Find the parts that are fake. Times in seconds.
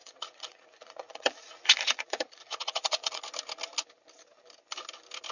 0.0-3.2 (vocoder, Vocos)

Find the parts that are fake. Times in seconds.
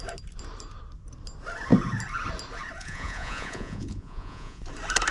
2.8-4.6 (vocoder, Vocos)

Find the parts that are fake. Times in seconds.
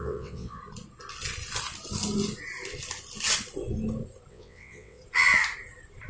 0.0-0.6 (vocoder, WaveNeXt); 4.3-5.0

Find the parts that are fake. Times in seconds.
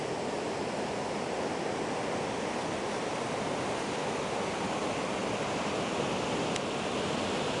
none